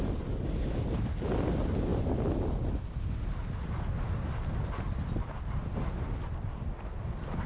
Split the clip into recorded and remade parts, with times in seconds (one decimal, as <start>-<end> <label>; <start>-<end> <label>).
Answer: 0.0-7.5 recorded